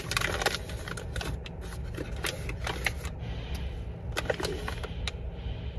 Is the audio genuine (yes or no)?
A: yes